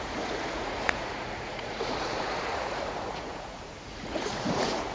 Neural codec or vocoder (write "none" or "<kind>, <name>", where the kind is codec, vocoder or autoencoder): vocoder, Vocos